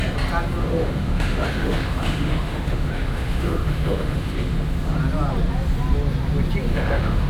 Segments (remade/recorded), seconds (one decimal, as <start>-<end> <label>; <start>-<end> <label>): 0.0-0.6 recorded; 0.6-5.0 remade; 5.0-6.7 recorded; 6.7-7.3 remade